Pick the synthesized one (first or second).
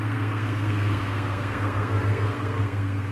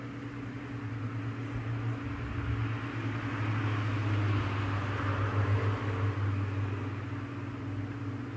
first